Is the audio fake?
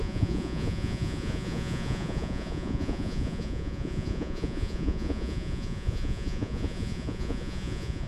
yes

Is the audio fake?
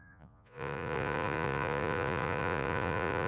yes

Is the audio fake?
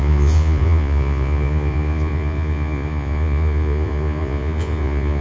yes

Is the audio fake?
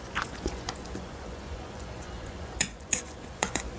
yes